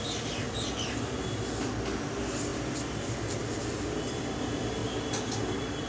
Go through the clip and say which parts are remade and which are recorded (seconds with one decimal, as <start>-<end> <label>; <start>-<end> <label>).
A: 0.0-5.9 recorded